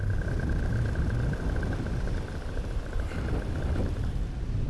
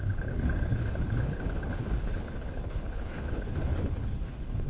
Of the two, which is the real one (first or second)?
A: first